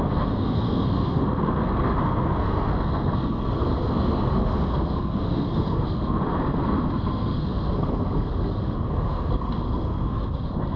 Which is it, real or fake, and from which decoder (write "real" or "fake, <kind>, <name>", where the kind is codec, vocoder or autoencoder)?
fake, codec, SNAC